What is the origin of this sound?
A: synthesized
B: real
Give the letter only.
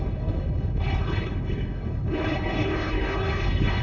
A